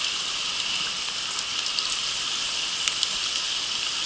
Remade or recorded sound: recorded